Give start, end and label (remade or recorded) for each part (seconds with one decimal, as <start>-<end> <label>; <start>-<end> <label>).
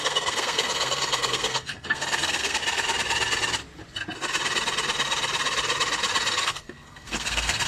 0.0-2.6 remade; 2.6-6.4 recorded; 6.4-7.7 remade